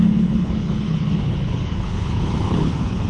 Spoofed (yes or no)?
yes